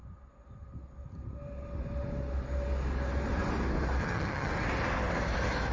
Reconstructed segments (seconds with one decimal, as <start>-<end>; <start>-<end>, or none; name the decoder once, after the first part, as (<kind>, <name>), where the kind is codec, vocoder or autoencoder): 4.0-4.5 (vocoder, HiFi-GAN)